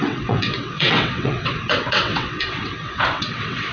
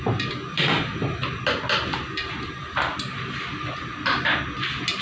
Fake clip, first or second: first